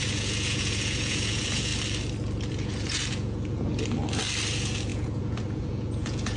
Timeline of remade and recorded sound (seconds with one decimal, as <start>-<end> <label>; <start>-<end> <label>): 0.0-1.7 remade; 1.7-2.5 recorded; 2.5-3.7 remade; 3.7-4.5 recorded; 4.5-6.4 remade